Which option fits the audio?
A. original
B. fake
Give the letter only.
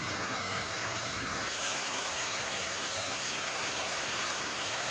B